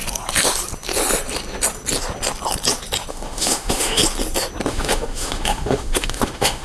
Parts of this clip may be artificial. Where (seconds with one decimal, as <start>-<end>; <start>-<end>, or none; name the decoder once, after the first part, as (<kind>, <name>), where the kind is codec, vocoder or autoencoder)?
3.1-4.0 (autoencoder, DAC-VAE); 4.7-6.6